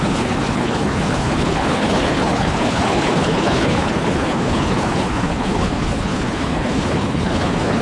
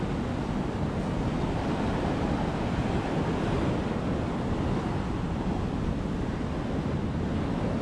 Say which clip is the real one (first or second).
second